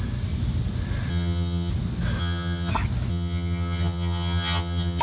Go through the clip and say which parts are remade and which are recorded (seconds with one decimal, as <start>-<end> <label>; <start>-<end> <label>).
0.0-1.1 recorded; 1.1-1.7 remade; 1.7-2.2 recorded; 2.2-2.7 remade; 2.7-3.1 recorded; 3.1-5.0 remade